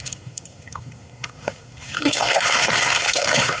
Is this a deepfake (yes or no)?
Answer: yes